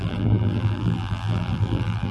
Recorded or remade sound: remade